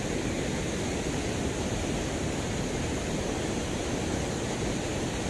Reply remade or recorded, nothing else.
recorded